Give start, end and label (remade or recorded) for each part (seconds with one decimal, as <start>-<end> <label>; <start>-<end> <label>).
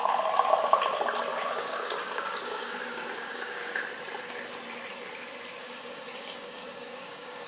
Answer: 0.0-1.3 recorded; 1.3-3.8 remade; 3.8-5.6 recorded; 5.6-7.5 remade